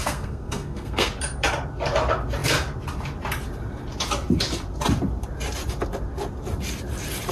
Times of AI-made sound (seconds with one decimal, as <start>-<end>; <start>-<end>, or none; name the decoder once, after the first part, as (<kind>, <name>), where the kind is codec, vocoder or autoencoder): 0.0-1.1 (codec, SNAC)